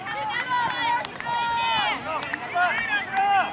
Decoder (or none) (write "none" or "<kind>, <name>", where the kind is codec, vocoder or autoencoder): none